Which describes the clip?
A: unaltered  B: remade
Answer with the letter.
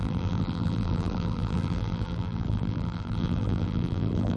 B